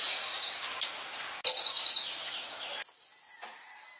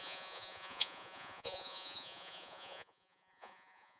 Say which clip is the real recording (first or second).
first